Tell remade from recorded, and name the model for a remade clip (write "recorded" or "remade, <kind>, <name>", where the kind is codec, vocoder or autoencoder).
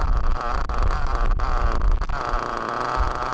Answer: recorded